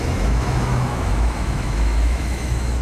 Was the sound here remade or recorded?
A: remade